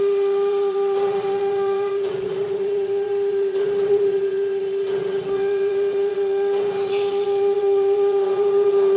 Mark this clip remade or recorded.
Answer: remade